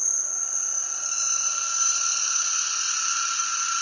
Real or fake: real